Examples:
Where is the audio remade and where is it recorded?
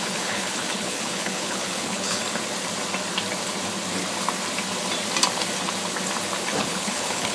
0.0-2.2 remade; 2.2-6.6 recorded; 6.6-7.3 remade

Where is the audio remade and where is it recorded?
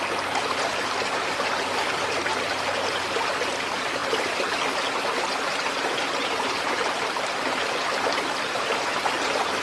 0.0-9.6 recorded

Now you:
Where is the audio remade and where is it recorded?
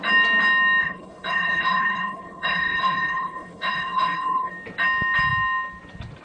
0.0-0.8 recorded; 0.8-4.5 remade; 4.5-6.2 recorded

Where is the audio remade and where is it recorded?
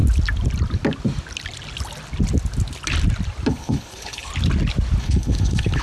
0.0-3.5 recorded; 3.5-4.3 remade; 4.3-5.0 recorded; 5.0-5.8 remade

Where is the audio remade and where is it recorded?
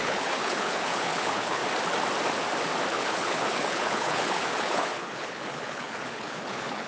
0.0-1.6 remade; 1.6-2.9 recorded; 2.9-6.9 remade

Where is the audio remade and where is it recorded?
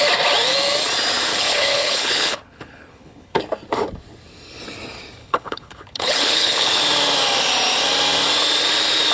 0.0-1.3 recorded; 1.3-3.4 remade; 3.4-5.2 recorded; 5.2-6.8 remade; 6.8-9.1 recorded